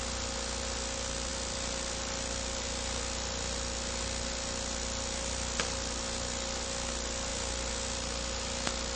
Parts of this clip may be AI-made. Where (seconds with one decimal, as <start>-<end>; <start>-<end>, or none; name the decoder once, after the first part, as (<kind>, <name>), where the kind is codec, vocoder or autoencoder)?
none